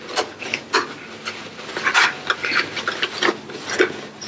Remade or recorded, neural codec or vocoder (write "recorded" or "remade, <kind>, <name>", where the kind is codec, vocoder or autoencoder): recorded